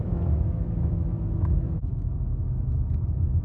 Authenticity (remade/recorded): remade